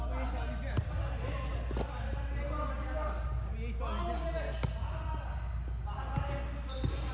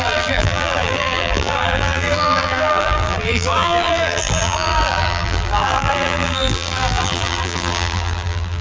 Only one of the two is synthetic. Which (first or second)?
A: second